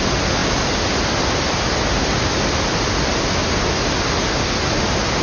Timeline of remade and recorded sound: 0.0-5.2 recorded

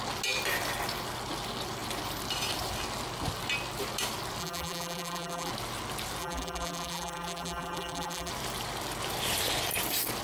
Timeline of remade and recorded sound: 0.0-4.4 recorded; 4.4-5.5 remade; 5.5-6.2 recorded; 6.2-8.3 remade; 8.3-10.2 recorded

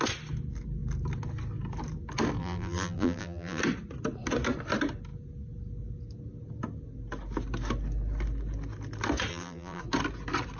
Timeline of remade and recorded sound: 0.0-2.4 recorded; 2.4-3.6 remade; 3.6-9.3 recorded; 9.3-9.8 remade; 9.8-10.6 recorded

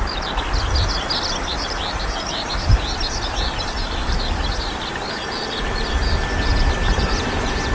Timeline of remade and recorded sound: 0.0-1.5 recorded; 1.5-4.6 remade; 4.6-7.7 recorded

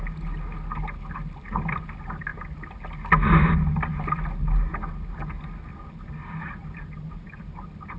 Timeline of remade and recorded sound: 0.0-6.6 recorded; 6.6-7.4 remade; 7.4-8.0 recorded

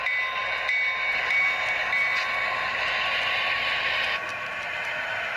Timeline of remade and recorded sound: 0.0-4.3 recorded; 4.3-5.4 remade

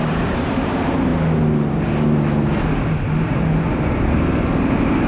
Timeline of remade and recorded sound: 0.0-1.1 remade; 1.1-4.0 recorded; 4.0-5.1 remade